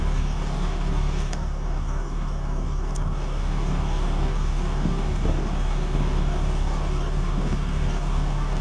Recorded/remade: remade